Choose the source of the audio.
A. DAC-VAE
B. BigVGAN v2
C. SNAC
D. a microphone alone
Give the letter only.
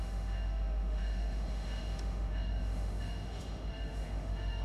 A